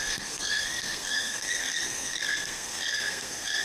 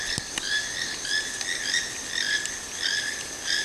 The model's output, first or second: first